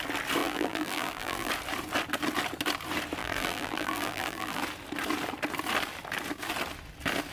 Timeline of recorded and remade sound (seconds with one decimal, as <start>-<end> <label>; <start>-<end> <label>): 0.0-0.4 recorded; 0.4-1.5 remade; 1.5-3.2 recorded; 3.2-4.6 remade; 4.6-7.3 recorded